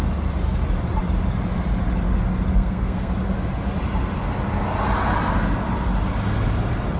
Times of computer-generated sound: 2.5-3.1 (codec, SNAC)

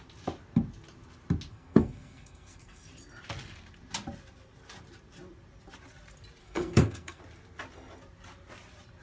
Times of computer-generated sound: 1.5-2.9 (codec, SNAC); 6.4-7.2

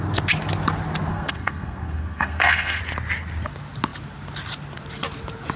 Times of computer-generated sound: 1.1-2.8 (codec, SNAC)

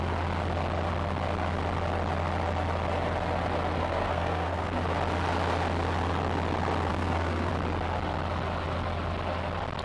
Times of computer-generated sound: 3.8-4.8 (codec, SNAC); 6.9-7.5